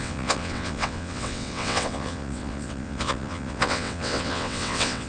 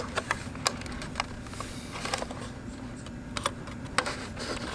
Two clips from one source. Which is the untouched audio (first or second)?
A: second